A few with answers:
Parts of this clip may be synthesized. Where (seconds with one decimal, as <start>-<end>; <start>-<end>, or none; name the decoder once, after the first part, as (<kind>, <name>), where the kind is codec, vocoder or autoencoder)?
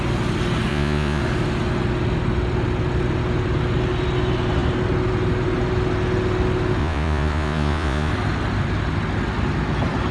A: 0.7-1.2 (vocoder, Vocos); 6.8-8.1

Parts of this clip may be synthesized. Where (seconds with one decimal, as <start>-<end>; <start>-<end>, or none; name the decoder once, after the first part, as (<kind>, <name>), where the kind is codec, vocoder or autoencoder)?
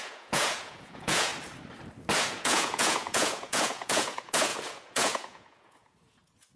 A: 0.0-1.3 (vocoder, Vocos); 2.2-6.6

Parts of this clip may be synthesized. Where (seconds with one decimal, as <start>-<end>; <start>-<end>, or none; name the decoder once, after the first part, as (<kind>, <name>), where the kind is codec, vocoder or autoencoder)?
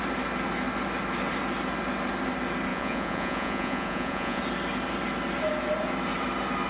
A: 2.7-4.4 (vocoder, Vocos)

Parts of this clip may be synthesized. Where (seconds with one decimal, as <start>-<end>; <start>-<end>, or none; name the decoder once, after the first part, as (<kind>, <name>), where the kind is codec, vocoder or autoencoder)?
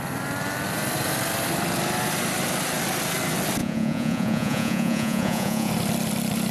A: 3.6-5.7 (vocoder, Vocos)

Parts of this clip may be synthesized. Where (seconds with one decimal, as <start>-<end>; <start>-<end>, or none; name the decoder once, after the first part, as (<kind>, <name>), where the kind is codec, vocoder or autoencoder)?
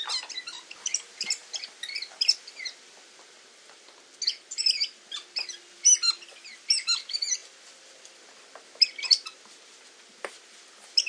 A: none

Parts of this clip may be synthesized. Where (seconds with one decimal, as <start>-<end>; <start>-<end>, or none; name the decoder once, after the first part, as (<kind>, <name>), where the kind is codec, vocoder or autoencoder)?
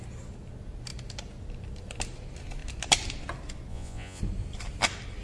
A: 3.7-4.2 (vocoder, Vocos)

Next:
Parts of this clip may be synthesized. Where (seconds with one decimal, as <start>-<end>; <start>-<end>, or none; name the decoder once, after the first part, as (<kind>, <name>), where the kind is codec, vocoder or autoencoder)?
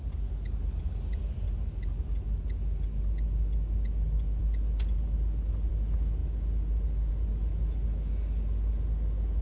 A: none